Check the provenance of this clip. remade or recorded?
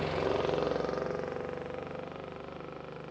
recorded